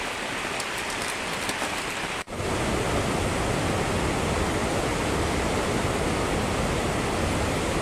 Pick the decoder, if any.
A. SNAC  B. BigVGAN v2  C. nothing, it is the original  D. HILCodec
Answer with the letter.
C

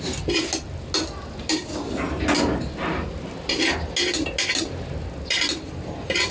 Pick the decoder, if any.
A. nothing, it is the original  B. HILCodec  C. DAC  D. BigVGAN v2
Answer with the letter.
A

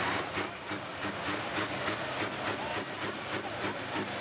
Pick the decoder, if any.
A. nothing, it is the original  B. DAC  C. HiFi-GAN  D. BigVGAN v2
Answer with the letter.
A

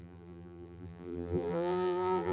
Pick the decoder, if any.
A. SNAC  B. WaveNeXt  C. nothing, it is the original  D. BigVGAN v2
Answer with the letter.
D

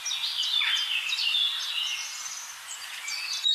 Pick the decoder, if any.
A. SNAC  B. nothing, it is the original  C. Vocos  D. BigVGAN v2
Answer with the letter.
B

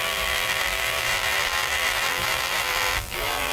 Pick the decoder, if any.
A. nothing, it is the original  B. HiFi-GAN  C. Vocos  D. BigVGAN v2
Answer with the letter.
D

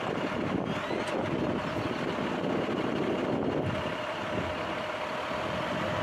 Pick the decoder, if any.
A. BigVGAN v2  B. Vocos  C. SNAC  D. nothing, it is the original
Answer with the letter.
D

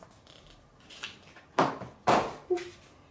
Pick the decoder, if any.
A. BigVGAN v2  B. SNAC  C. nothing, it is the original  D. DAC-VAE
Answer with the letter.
C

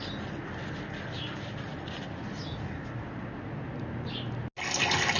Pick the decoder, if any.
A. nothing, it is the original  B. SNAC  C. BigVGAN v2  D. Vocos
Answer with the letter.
A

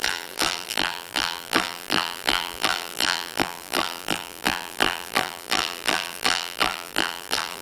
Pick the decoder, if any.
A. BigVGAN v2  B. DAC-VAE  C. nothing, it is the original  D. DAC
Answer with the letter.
A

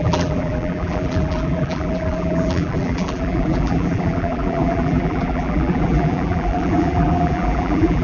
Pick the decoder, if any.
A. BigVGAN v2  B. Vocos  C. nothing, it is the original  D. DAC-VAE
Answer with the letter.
A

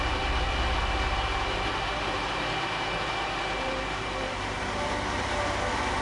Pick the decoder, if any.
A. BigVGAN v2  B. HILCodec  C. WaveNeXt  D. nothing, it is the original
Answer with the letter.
A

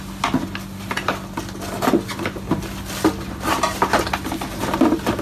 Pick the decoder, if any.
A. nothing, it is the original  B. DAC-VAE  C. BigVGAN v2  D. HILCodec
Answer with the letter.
A